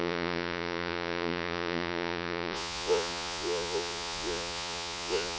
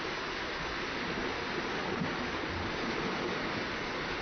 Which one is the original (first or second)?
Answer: second